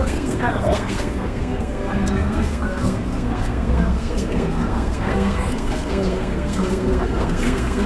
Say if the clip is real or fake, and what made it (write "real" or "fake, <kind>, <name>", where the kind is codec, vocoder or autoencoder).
fake, codec, SNAC